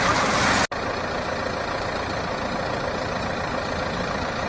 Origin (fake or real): real